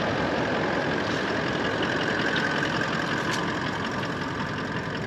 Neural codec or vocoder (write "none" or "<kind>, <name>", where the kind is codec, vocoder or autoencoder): none